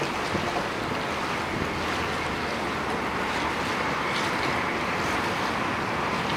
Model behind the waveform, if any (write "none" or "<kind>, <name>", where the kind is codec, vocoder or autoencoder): none